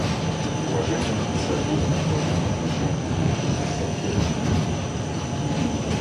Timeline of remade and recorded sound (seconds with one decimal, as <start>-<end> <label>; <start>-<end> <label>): 0.0-2.9 recorded; 2.9-4.2 remade; 4.2-6.0 recorded

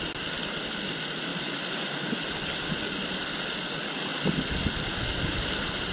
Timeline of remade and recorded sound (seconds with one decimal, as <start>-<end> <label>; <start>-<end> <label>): 0.0-5.9 recorded

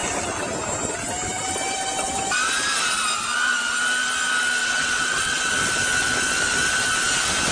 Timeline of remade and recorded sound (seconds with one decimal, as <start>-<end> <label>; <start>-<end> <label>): 0.0-4.6 recorded; 4.6-5.5 remade; 5.5-7.5 recorded

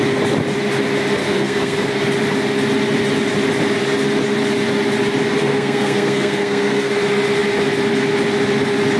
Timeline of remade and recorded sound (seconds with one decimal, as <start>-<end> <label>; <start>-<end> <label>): 0.0-1.2 recorded; 1.2-1.9 remade; 1.9-5.4 recorded; 5.4-6.9 remade; 6.9-9.0 recorded

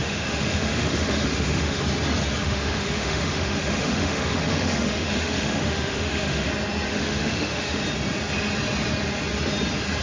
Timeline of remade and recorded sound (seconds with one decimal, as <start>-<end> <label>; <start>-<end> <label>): 0.0-1.8 remade; 1.8-2.4 recorded; 2.4-6.5 remade; 6.5-6.9 recorded; 6.9-7.8 remade; 7.8-10.0 recorded

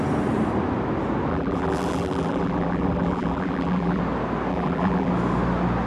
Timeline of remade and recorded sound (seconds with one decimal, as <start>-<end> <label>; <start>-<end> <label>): 0.0-1.3 recorded; 1.3-4.0 remade; 4.0-4.5 recorded; 4.5-5.1 remade; 5.1-5.9 recorded

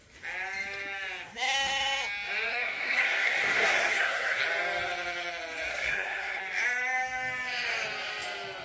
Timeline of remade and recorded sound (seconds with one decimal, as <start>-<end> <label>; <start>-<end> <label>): 0.0-2.5 recorded; 2.5-4.4 remade; 4.4-5.7 recorded; 5.7-6.4 remade; 6.4-8.6 recorded

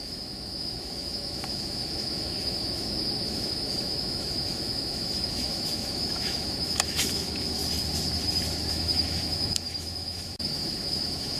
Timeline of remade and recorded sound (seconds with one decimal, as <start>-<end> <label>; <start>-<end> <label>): 0.0-7.6 remade; 7.6-8.7 recorded; 8.7-11.4 remade